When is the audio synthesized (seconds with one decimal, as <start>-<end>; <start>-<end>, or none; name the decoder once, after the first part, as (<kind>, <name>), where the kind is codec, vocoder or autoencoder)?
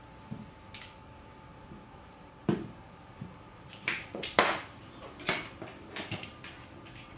1.5-5.3 (vocoder, BigVGAN v2)